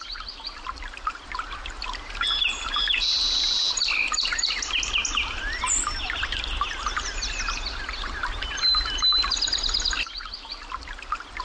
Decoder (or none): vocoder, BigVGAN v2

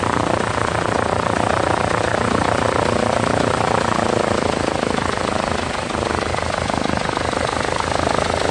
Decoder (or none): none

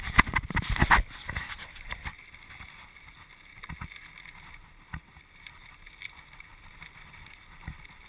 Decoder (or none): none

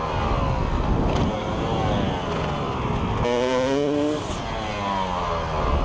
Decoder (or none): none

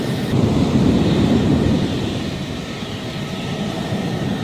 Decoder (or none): vocoder, BigVGAN v2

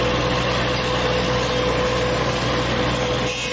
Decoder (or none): none